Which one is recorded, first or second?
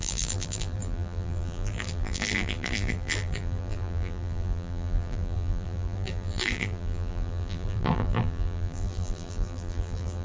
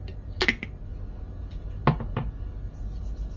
second